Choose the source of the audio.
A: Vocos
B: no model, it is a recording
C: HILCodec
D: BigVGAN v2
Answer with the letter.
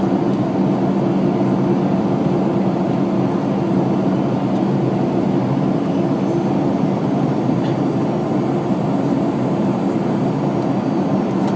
B